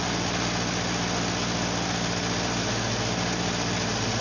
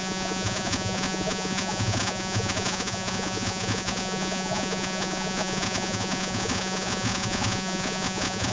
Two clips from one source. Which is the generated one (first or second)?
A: second